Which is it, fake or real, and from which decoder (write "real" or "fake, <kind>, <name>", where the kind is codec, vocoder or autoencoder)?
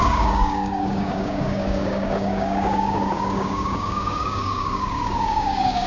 fake, codec, DAC